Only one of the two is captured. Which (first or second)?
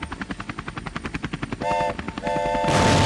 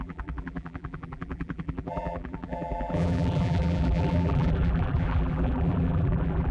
first